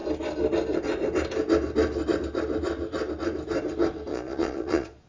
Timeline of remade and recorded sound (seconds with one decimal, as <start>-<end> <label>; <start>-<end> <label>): 0.0-4.1 recorded; 4.1-5.1 remade